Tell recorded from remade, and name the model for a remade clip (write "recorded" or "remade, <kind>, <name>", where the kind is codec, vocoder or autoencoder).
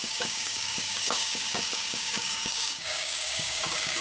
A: remade, codec, DAC